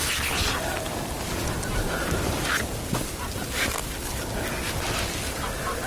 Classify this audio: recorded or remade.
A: recorded